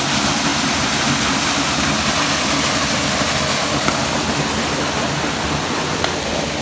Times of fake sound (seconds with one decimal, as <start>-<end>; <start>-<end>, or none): 0.5-3.2